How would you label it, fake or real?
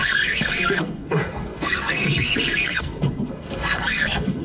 fake